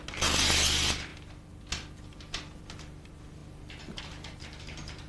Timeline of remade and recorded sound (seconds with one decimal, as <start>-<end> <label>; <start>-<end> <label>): 0.0-5.1 recorded